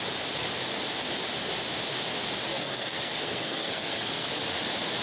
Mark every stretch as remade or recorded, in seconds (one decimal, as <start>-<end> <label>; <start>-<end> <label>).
0.0-2.5 recorded; 2.5-4.3 remade; 4.3-5.0 recorded